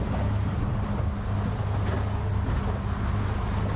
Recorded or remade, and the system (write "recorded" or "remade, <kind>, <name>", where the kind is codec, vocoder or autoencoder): recorded